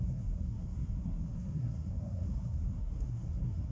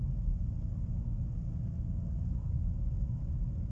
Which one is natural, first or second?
second